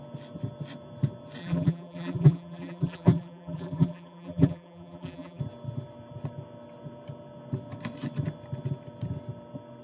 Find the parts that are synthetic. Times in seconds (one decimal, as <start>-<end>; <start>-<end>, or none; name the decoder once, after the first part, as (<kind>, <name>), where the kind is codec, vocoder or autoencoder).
1.4-5.4 (vocoder, BigVGAN v2)